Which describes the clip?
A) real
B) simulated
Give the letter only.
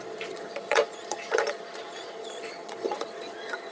B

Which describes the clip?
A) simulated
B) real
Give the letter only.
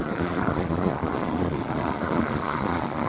A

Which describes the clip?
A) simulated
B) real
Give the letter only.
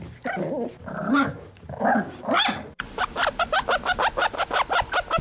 B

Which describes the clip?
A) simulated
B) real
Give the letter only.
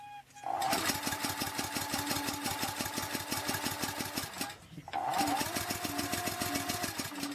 B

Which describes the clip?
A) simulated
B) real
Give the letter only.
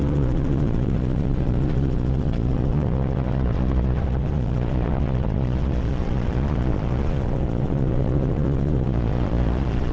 A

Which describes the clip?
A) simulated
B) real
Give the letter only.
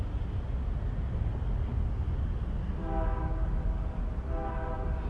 B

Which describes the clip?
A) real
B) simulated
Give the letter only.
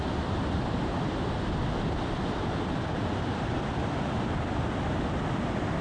A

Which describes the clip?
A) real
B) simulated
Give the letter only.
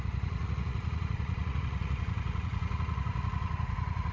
B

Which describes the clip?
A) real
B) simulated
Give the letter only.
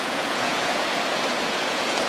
B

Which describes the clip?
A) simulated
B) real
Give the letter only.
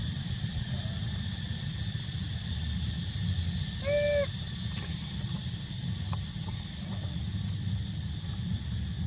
B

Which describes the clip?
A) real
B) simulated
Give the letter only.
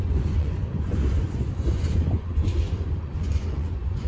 B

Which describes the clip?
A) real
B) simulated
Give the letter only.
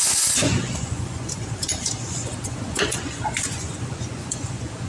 B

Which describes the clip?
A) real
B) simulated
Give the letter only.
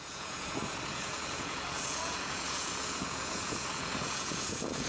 B